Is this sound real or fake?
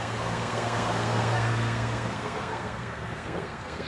fake